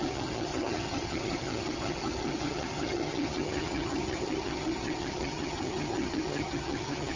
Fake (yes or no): yes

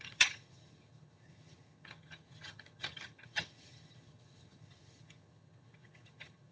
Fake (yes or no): yes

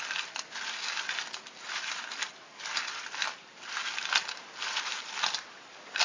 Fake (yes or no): no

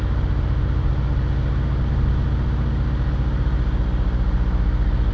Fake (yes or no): no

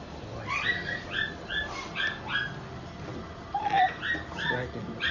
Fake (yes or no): no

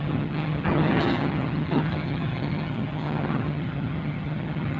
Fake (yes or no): yes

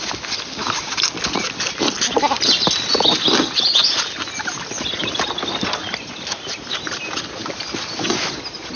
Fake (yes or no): no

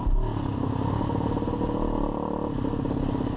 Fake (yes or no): no